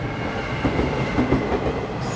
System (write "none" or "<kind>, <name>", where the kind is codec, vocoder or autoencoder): none